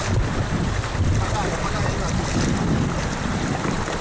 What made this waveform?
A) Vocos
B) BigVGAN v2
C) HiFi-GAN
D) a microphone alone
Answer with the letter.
D